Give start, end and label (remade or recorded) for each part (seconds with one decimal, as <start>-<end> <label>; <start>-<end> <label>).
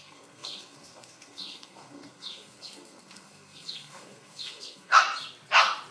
0.0-4.9 remade; 4.9-5.9 recorded